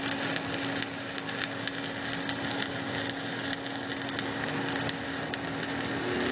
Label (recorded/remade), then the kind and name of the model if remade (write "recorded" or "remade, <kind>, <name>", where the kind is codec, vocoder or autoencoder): recorded